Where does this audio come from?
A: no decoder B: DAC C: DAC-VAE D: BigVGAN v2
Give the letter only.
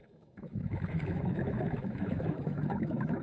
C